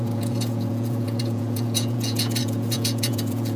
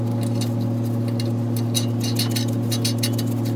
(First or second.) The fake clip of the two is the first